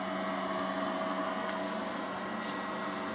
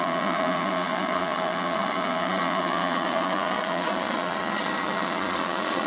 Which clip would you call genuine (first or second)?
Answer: first